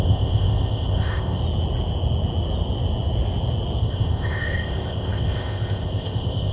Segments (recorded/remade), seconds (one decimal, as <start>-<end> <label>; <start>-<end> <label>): 0.0-1.4 remade; 1.4-3.8 recorded; 3.8-6.5 remade